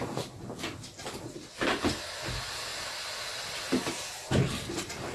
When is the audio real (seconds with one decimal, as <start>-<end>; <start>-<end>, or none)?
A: 0.0-5.1